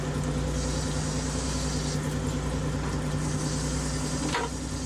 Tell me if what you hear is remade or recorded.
recorded